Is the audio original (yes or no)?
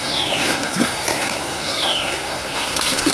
no